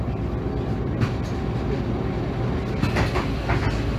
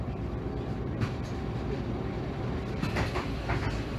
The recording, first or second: first